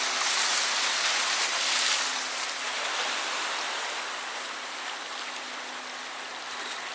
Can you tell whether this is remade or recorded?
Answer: recorded